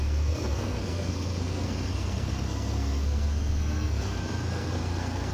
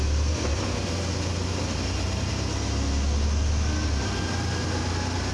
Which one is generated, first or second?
first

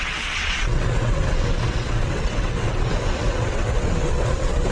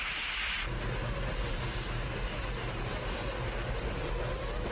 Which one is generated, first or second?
first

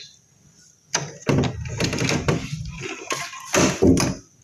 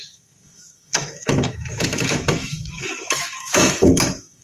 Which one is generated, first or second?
second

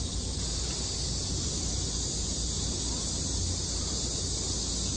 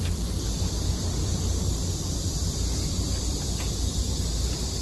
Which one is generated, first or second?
second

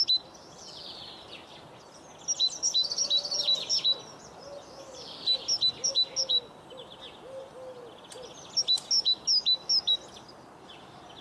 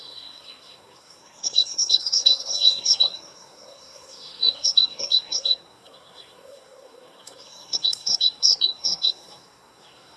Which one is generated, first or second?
second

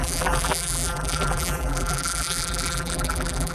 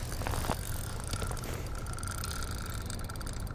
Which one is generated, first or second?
first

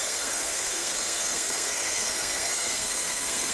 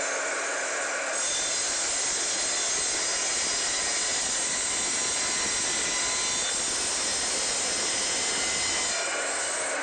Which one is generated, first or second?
first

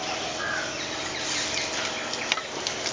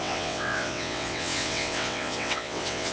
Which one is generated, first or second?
second